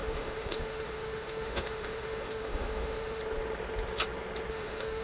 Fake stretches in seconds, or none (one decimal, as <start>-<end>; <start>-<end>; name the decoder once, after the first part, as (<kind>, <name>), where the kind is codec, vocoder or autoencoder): 0.0-3.2 (autoencoder, DAC-VAE); 4.5-5.0